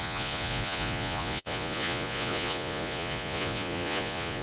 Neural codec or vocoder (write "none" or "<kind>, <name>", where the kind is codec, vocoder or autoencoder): vocoder, Vocos